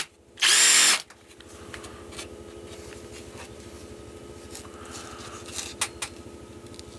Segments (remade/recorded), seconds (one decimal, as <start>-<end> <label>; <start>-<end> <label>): 0.0-7.0 recorded